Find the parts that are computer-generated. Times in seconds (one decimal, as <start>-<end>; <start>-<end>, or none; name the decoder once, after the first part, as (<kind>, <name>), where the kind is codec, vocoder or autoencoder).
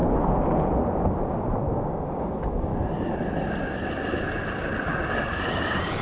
1.7-2.7 (codec, DAC); 5.5-6.0